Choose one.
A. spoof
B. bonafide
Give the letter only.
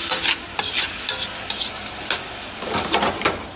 B